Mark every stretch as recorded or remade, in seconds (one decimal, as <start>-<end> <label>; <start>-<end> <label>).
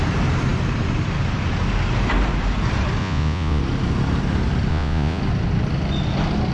0.0-3.0 recorded; 3.0-3.6 remade; 3.6-4.7 recorded; 4.7-5.2 remade; 5.2-6.5 recorded